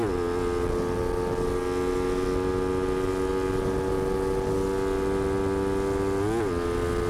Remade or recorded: recorded